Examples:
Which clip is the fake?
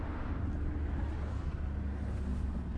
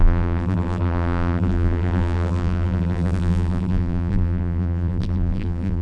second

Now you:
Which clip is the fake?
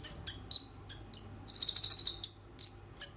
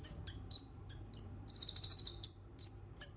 second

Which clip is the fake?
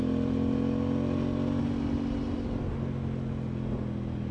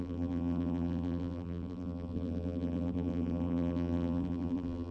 second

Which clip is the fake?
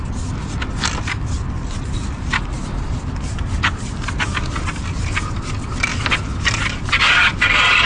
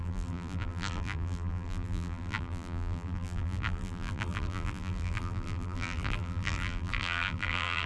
second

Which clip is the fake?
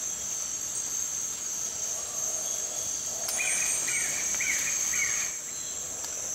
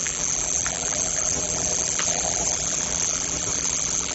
second